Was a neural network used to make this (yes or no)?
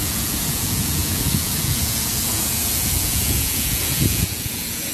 yes